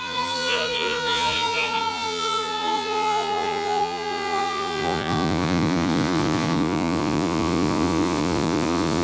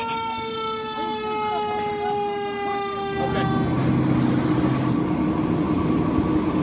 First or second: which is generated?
first